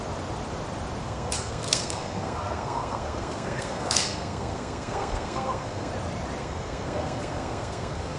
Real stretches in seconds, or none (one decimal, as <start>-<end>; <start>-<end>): 0.0-1.0; 5.9-6.4